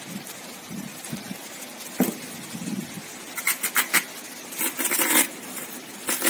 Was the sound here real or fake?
real